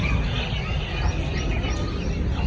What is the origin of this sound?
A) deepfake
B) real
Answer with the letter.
B